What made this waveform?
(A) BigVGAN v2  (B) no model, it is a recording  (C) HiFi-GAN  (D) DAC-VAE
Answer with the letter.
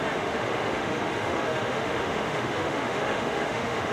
D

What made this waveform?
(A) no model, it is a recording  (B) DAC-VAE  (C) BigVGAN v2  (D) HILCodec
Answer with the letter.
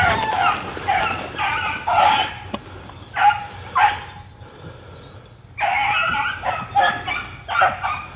A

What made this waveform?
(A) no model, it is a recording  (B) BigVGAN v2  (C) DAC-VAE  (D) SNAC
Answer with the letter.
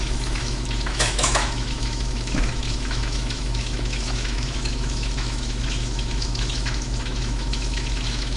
C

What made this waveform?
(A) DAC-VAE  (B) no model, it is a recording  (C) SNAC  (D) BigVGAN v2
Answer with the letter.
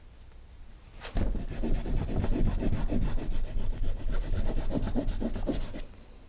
B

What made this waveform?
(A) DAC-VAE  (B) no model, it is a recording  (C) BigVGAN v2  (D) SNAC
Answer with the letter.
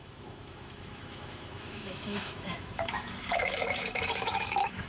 A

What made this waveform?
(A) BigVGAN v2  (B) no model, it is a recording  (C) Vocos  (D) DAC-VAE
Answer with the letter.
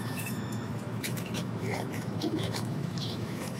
D